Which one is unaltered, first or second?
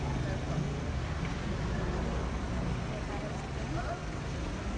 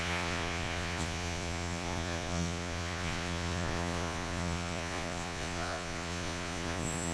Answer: first